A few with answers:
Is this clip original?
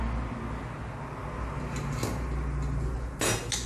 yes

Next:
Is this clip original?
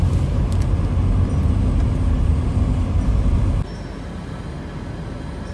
yes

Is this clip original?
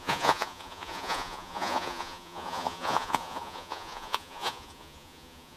no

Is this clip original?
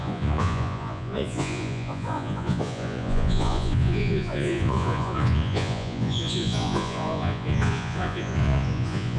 no